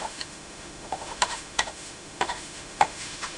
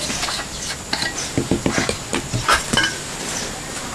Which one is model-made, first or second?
first